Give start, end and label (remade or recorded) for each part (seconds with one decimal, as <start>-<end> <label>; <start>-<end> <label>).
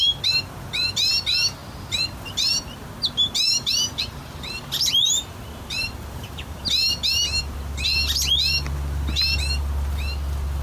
0.0-3.5 recorded; 3.5-6.7 remade; 6.7-10.6 recorded